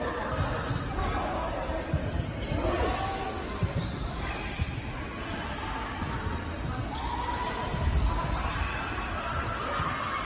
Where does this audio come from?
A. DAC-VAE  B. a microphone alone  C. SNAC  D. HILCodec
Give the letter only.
B